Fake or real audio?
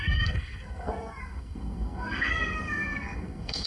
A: fake